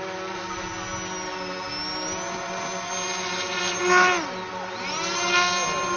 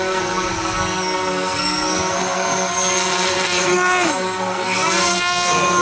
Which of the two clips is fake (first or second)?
second